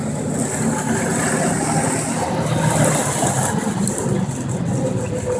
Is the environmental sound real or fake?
real